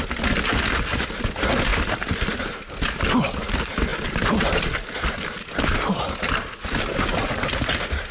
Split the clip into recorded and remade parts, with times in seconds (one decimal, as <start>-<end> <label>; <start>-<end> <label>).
0.0-3.9 recorded; 3.9-5.1 remade; 5.1-8.1 recorded